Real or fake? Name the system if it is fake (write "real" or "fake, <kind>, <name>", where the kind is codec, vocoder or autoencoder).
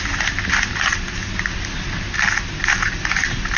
real